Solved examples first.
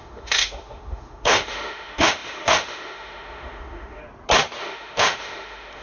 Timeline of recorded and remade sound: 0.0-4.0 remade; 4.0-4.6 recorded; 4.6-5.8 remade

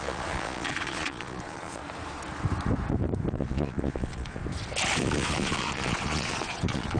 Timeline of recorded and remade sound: 0.0-1.8 remade; 1.8-3.3 recorded; 3.3-4.4 remade; 4.4-5.0 recorded; 5.0-7.0 remade

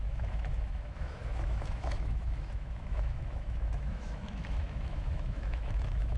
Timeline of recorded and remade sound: 0.0-6.2 remade

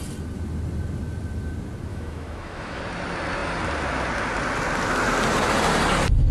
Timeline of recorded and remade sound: 0.0-1.9 recorded; 1.9-2.8 remade; 2.8-6.3 recorded

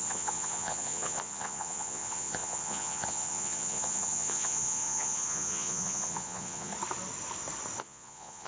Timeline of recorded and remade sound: 0.0-6.7 remade; 6.7-7.8 recorded; 7.8-8.5 remade

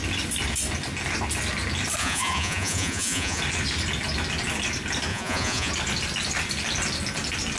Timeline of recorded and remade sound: 0.0-2.0 recorded; 2.0-3.4 remade; 3.4-5.1 recorded; 5.1-5.7 remade; 5.7-7.6 recorded

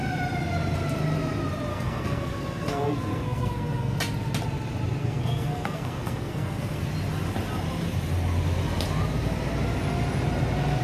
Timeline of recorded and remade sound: 0.0-1.7 recorded; 1.7-4.0 remade; 4.0-5.0 recorded; 5.0-6.8 remade; 6.8-10.8 recorded

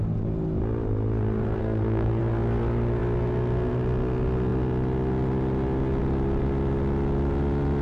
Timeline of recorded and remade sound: 0.0-1.6 recorded; 1.6-2.2 remade; 2.2-7.8 recorded